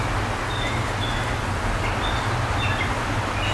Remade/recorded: recorded